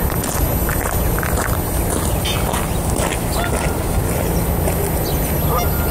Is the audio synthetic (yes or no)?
no